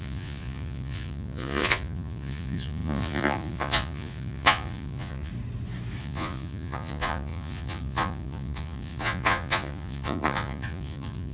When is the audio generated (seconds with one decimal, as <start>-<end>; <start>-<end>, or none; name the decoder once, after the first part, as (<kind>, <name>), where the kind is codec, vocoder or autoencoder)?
0.0-5.3 (vocoder, Vocos); 6.0-11.3